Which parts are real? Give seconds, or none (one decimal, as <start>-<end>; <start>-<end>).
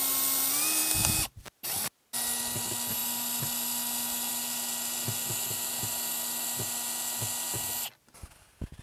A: 0.0-8.8